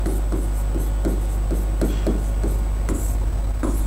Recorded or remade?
recorded